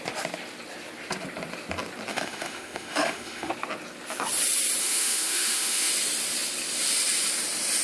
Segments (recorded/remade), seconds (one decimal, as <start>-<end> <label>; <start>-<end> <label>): 0.0-2.1 recorded; 2.1-3.5 remade; 3.5-4.8 recorded; 4.8-5.9 remade; 5.9-7.8 recorded